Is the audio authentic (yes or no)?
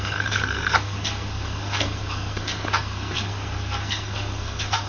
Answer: no